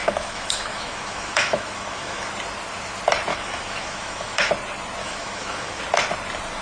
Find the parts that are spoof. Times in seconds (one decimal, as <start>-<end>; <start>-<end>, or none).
0.0-2.3; 3.3-4.5; 5.0-5.8